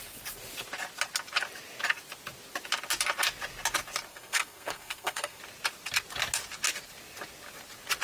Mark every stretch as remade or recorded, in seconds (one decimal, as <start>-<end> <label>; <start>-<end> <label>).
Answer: 0.0-4.1 recorded; 4.1-5.4 remade; 5.4-8.0 recorded